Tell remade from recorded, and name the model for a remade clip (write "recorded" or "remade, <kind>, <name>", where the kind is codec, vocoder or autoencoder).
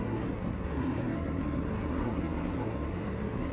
remade, codec, SNAC